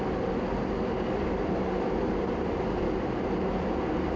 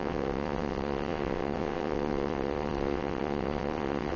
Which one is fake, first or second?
second